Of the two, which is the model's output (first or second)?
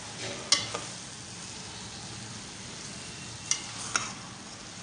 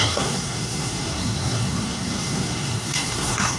second